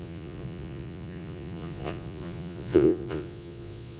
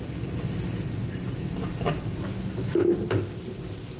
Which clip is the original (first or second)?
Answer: second